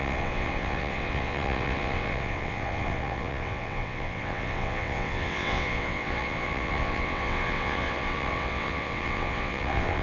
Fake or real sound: fake